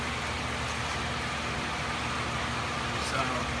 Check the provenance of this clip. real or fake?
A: real